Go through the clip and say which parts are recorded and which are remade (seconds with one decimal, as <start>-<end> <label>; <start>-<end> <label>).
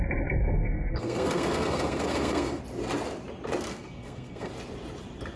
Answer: 0.0-0.4 recorded; 0.4-2.6 remade; 2.6-3.7 recorded; 3.7-4.5 remade; 4.5-5.4 recorded